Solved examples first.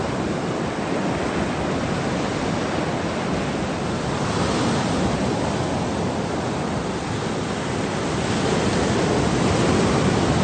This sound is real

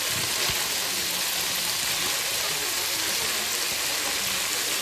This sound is real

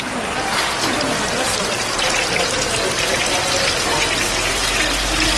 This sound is real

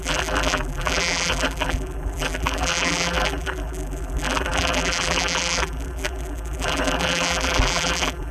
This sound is fake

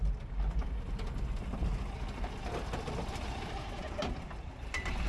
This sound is real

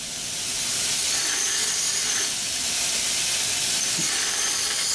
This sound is fake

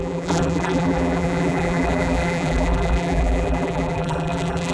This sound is fake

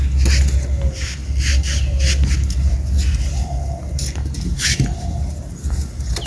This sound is real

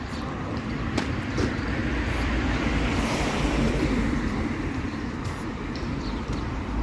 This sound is fake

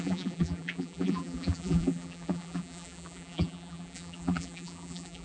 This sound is fake